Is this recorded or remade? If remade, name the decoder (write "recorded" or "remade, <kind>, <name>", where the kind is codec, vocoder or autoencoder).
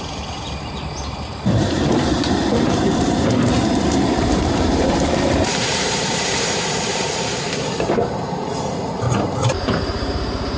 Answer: remade, vocoder, BigVGAN v2